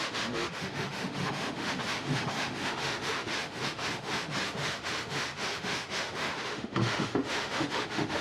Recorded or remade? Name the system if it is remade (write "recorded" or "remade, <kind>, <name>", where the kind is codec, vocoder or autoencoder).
remade, autoencoder, DAC-VAE